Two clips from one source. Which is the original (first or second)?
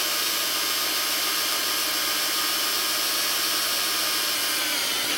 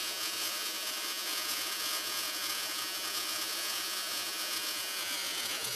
first